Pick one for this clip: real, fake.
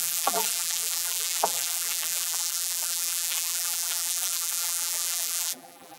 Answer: fake